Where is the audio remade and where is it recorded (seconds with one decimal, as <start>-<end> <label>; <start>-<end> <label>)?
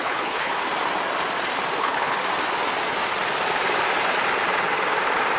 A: 0.0-0.5 remade; 0.5-1.8 recorded; 1.8-2.2 remade; 2.2-5.4 recorded